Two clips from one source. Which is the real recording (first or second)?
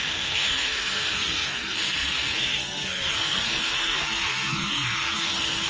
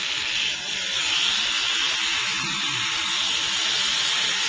second